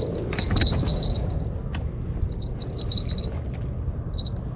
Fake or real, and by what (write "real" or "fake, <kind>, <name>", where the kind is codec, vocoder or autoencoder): real